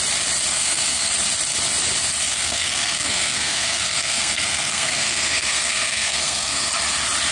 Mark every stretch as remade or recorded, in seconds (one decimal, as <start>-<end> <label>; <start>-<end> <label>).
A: 0.0-0.5 recorded; 0.5-1.1 remade; 1.1-2.3 recorded; 2.3-6.7 remade; 6.7-7.3 recorded